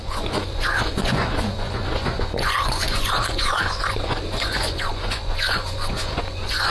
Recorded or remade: remade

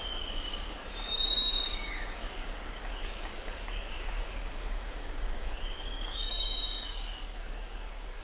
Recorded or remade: remade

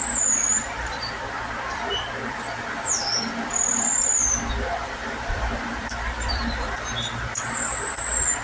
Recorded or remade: remade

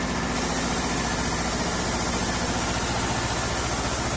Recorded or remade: recorded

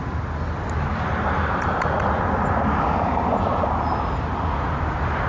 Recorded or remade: recorded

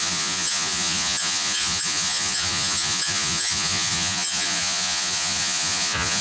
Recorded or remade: remade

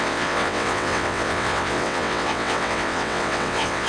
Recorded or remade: remade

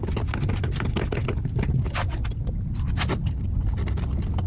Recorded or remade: recorded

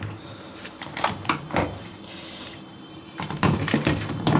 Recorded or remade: remade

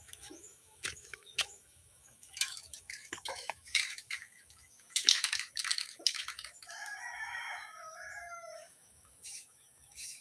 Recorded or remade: remade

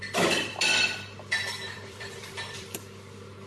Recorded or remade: remade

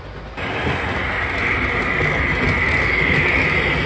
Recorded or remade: recorded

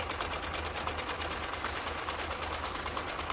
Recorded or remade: recorded